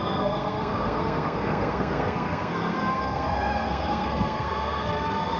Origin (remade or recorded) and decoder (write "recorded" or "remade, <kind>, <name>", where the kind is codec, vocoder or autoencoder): remade, codec, SNAC